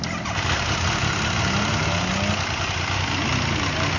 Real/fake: real